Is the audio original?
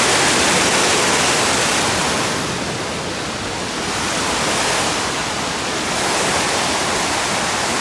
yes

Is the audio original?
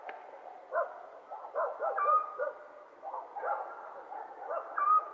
yes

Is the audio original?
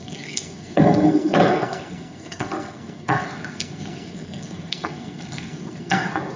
no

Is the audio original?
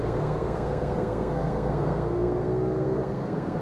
no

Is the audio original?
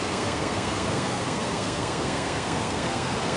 no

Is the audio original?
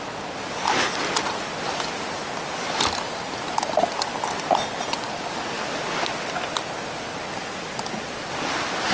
yes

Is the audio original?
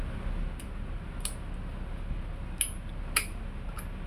yes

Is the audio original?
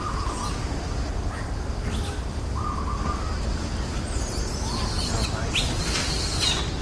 yes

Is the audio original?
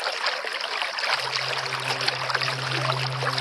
yes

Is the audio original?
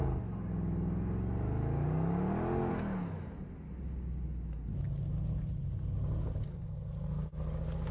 yes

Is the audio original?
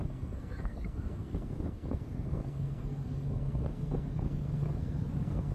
no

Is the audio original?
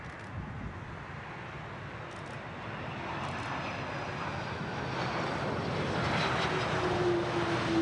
yes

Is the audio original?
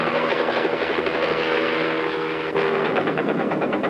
no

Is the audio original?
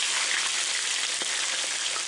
yes